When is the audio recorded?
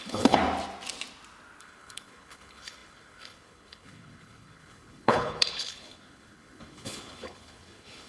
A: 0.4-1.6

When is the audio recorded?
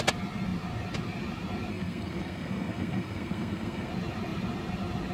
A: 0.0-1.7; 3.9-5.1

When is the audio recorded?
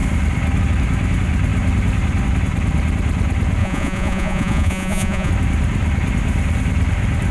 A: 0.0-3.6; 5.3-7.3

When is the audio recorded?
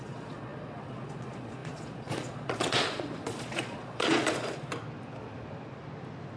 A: 4.7-6.4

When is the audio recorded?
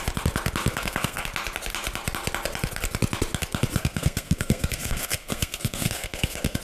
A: 0.0-0.7; 1.3-3.8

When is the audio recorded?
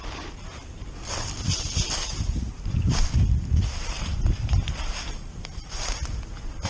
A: 0.0-2.3; 6.3-6.7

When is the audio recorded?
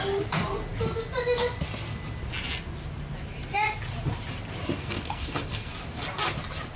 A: 0.0-4.8; 5.7-6.8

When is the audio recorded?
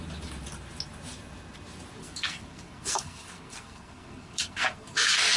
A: 0.0-2.0